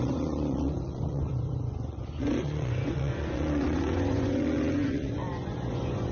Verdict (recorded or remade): remade